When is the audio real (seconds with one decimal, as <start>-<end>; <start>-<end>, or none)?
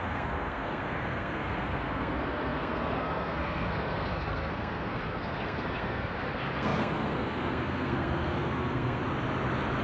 9.0-9.8